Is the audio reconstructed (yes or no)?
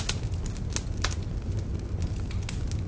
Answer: no